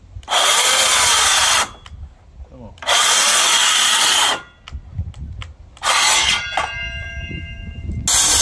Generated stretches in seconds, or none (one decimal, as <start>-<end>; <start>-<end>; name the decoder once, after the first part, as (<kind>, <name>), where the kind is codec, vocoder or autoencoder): none